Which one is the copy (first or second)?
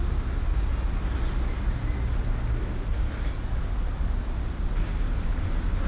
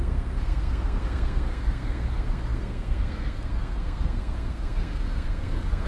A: second